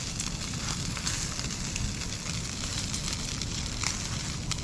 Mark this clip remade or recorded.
recorded